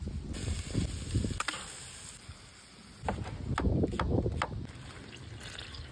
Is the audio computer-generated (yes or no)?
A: no